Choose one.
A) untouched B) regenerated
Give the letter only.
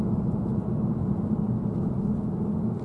A